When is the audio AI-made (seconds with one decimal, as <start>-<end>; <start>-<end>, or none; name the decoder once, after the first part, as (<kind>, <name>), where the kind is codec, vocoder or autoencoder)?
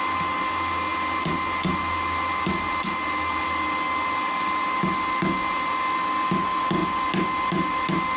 none